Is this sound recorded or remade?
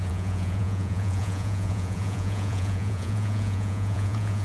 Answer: remade